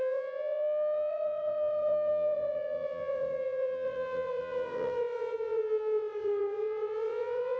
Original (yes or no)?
no